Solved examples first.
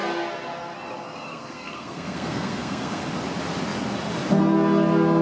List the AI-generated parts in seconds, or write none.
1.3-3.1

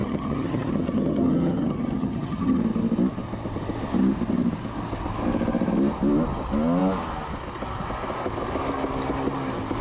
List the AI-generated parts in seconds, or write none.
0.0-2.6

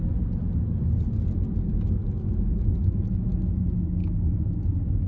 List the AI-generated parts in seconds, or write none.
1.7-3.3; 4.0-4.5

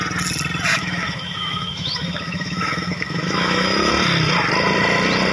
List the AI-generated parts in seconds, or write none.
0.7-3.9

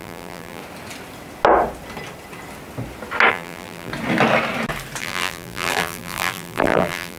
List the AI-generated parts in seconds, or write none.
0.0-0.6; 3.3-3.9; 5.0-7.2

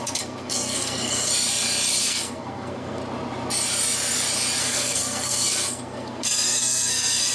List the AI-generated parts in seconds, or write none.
0.0-1.3; 2.0-3.0; 4.6-7.3

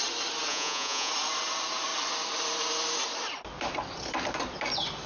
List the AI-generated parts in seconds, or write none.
0.5-1.1